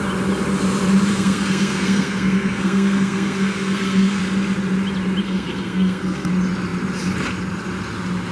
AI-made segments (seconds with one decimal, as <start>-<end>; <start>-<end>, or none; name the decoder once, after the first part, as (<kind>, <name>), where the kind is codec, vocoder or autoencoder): 1.1-4.2 (codec, SNAC); 5.2-6.3